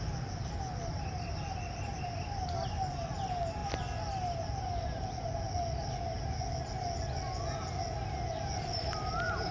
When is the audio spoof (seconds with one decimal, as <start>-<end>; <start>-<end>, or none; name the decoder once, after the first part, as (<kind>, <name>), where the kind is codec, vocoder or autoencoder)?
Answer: none

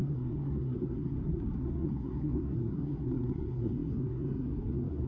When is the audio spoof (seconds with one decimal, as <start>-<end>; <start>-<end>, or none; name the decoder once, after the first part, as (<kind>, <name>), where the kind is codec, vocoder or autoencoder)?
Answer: 0.0-5.1 (codec, SNAC)

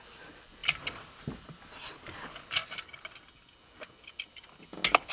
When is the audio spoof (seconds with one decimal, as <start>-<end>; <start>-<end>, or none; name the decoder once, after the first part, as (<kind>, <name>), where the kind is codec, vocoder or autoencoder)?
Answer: none

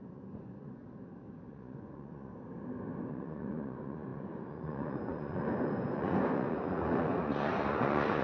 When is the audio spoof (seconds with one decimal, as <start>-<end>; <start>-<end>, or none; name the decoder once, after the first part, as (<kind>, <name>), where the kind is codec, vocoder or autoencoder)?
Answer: 0.0-0.8 (vocoder, Vocos); 1.5-2.3; 3.1-8.2

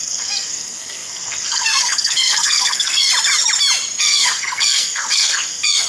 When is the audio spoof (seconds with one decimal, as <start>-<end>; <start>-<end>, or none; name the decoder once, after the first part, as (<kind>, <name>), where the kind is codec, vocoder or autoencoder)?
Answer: 0.0-3.1 (codec, SNAC); 4.0-5.9